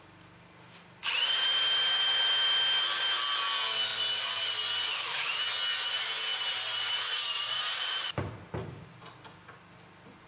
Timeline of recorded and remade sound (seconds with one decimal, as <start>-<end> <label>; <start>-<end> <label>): 0.0-1.0 recorded; 1.0-1.9 remade; 1.9-3.9 recorded; 3.9-4.4 remade; 4.4-6.3 recorded; 6.3-8.2 remade; 8.2-10.3 recorded